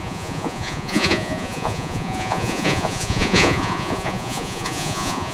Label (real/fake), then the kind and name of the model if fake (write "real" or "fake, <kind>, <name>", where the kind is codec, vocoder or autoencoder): fake, vocoder, Vocos